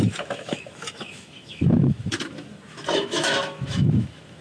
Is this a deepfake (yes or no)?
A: yes